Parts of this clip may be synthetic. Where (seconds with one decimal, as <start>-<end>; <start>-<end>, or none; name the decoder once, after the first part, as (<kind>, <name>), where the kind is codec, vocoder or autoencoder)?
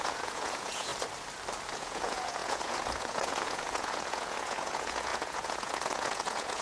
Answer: 0.0-0.9 (vocoder, Vocos); 1.7-6.6